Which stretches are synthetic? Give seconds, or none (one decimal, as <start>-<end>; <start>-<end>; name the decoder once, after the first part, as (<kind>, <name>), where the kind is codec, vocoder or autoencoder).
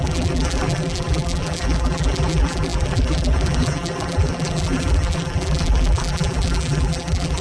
0.0-7.4 (vocoder, BigVGAN v2)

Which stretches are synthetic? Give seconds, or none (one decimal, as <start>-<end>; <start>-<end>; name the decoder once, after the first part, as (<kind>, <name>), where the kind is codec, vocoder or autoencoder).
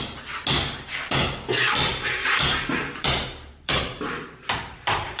1.9-5.2 (vocoder, BigVGAN v2)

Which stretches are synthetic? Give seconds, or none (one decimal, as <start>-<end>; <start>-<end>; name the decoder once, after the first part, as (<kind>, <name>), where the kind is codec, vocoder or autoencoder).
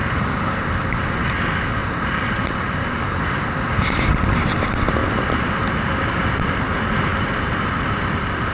1.8-3.0 (vocoder, BigVGAN v2)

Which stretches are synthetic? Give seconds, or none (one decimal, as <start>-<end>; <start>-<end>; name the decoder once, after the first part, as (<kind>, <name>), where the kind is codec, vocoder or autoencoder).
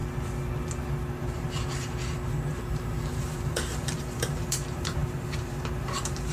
2.7-6.3 (vocoder, BigVGAN v2)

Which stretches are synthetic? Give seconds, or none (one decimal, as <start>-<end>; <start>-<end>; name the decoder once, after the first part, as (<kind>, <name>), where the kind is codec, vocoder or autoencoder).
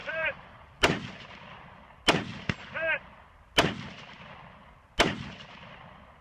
0.0-1.1 (vocoder, BigVGAN v2)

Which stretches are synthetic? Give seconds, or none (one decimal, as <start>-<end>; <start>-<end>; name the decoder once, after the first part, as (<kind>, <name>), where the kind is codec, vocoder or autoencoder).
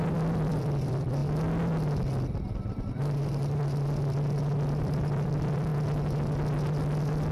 0.0-1.2 (vocoder, BigVGAN v2); 4.8-5.7